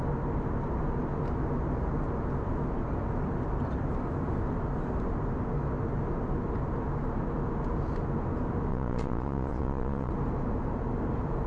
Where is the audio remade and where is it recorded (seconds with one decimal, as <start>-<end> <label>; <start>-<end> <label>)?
0.0-8.7 recorded; 8.7-10.1 remade; 10.1-11.5 recorded